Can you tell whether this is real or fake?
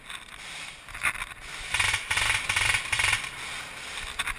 real